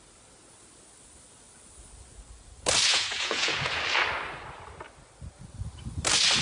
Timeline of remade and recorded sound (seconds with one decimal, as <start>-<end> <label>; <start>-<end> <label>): 0.0-2.9 recorded; 2.9-3.8 remade; 3.8-6.4 recorded